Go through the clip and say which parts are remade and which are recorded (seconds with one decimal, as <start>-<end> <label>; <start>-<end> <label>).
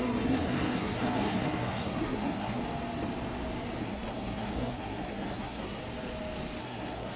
0.0-2.6 remade; 2.6-3.8 recorded; 3.8-5.8 remade; 5.8-6.6 recorded; 6.6-7.2 remade